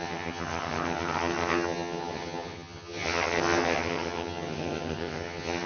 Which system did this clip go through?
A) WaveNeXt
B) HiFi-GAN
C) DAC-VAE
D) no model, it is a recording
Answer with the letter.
B